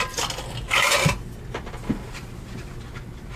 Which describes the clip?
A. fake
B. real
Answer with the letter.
B